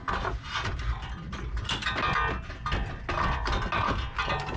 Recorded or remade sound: recorded